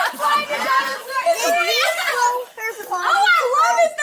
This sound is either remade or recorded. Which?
recorded